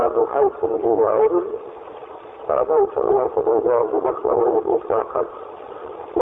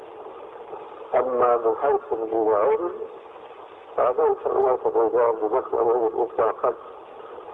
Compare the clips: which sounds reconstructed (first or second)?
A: first